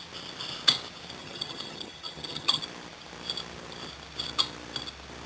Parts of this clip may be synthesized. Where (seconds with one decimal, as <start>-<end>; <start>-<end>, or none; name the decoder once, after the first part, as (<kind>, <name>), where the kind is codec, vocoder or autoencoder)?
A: 1.2-2.6 (vocoder, HiFi-GAN)